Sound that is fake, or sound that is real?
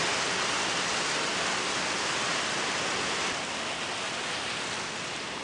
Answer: real